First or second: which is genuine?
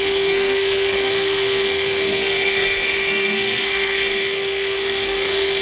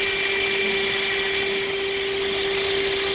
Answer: second